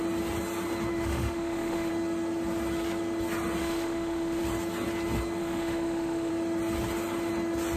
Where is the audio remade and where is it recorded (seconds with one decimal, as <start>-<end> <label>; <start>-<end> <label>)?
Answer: 0.0-0.9 recorded; 0.9-1.9 remade; 1.9-3.6 recorded; 3.6-4.4 remade; 4.4-5.4 recorded; 5.4-6.3 remade; 6.3-7.8 recorded